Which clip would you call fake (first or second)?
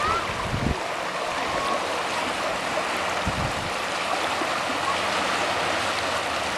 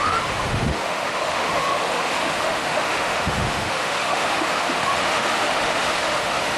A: second